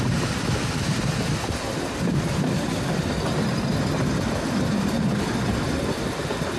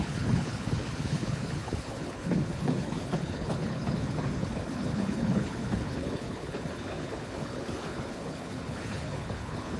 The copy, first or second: second